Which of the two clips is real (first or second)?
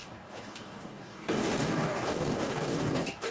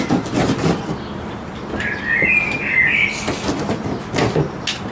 second